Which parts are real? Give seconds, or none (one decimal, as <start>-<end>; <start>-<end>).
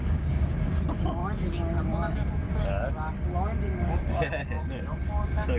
0.7-5.6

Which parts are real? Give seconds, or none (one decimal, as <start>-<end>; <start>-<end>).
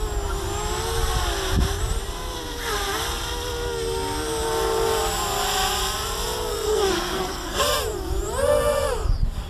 0.0-6.5; 7.6-9.5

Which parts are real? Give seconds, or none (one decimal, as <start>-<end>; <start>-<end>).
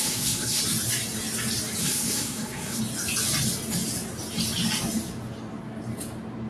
0.6-1.8; 2.8-6.5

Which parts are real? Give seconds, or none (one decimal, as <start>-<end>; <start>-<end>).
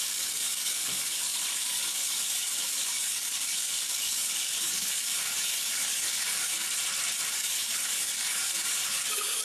6.6-7.3